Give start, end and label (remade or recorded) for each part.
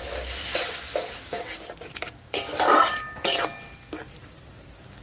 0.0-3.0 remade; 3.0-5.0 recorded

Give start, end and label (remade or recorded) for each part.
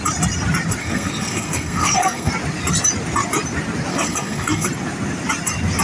0.0-0.8 recorded; 0.8-2.3 remade; 2.3-3.9 recorded; 3.9-4.7 remade; 4.7-5.8 recorded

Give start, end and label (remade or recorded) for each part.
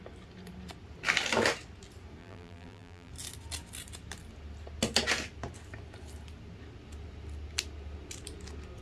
0.0-2.2 recorded; 2.2-3.1 remade; 3.1-8.8 recorded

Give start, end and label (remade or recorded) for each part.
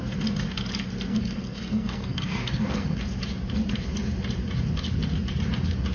0.0-1.1 recorded; 1.1-3.0 remade; 3.0-5.9 recorded